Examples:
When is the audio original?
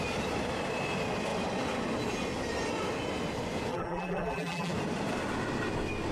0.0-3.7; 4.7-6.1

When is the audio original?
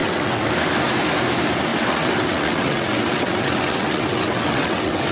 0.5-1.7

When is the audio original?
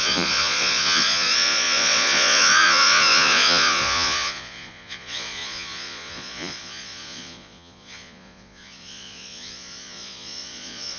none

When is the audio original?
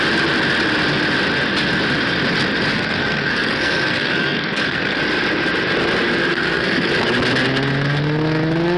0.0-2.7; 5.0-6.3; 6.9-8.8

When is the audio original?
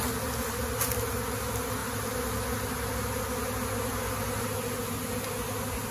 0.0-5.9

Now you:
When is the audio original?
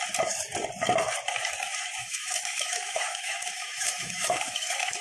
0.0-2.0